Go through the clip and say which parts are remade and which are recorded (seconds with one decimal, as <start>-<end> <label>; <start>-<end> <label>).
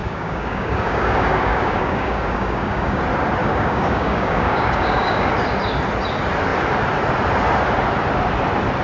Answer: 0.0-3.0 remade; 3.0-3.4 recorded; 3.4-5.3 remade; 5.3-8.8 recorded